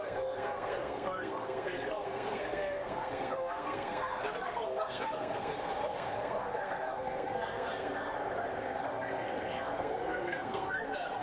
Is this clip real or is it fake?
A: fake